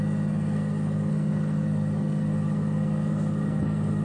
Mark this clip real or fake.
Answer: fake